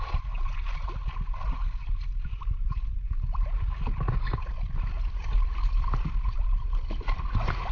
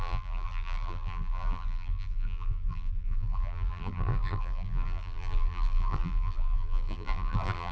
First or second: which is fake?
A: second